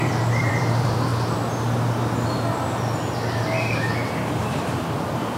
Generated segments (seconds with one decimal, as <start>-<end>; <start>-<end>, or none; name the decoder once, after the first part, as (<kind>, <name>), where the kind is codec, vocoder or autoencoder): 0.0-1.1 (vocoder, BigVGAN v2); 4.3-5.4